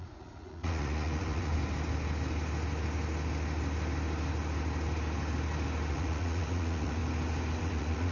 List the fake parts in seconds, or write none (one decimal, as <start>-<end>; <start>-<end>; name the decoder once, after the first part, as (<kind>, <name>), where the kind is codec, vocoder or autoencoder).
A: 0.0-1.5 (vocoder, Vocos); 5.9-7.0; 7.6-8.1